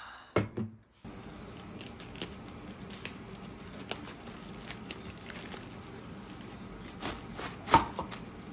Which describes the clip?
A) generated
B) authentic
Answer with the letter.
B